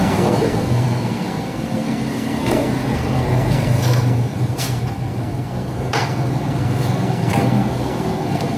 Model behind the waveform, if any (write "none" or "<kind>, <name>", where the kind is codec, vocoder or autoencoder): codec, SNAC